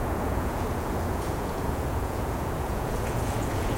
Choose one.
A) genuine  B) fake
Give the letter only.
B